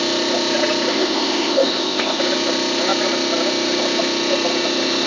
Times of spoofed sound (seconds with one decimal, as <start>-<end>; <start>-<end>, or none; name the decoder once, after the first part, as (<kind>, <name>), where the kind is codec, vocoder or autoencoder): 0.9-2.2 (codec, ZipCodec)